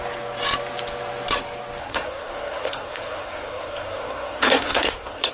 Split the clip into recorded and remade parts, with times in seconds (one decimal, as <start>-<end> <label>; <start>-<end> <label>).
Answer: 0.0-1.8 recorded; 1.8-5.3 remade